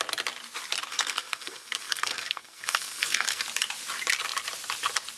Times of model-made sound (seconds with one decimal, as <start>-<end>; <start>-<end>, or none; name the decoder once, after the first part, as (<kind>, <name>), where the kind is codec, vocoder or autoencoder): 0.9-3.4 (codec, SNAC)